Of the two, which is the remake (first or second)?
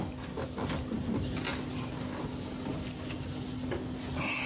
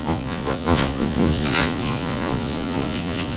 second